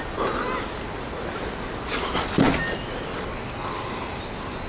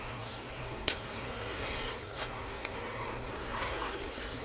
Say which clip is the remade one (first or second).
second